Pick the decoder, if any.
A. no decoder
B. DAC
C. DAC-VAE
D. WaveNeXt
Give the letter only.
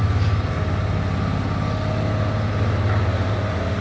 A